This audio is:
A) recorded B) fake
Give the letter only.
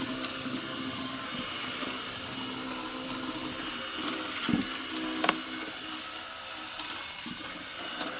A